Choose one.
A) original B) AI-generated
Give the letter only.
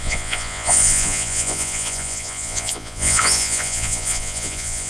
B